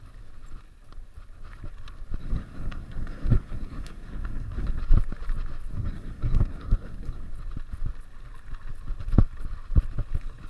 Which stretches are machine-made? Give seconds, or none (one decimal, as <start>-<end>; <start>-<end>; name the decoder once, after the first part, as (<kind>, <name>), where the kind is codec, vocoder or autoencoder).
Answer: 2.2-4.8 (codec, SNAC); 5.7-7.3